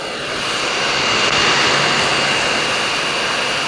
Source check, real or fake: real